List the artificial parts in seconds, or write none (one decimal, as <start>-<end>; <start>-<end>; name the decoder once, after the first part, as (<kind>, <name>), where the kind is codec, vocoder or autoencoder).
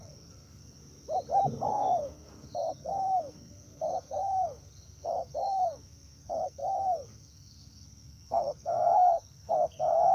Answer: 0.0-0.8 (codec, SNAC); 1.7-10.1